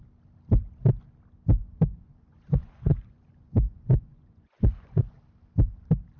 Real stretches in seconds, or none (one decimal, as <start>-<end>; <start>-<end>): 0.0-1.9; 5.0-6.2